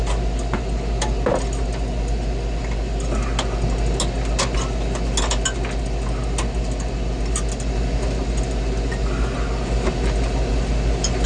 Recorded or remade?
recorded